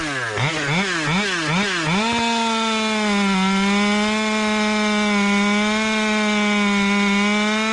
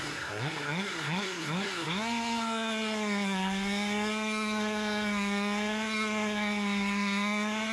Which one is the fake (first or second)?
second